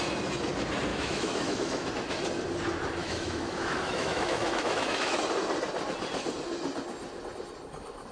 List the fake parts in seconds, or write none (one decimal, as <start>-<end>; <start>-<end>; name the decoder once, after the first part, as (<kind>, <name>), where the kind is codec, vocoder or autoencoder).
0.9-1.9 (autoencoder, DAC-VAE); 3.0-5.2